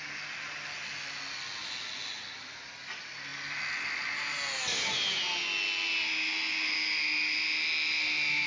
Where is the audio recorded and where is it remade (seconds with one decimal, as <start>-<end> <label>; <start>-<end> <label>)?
0.0-8.5 recorded